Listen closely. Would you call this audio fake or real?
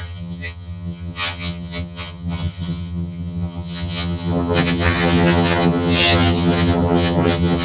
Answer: fake